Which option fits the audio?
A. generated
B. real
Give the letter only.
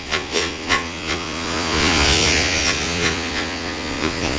A